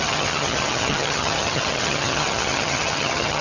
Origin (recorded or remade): remade